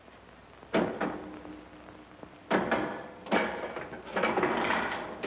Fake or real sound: real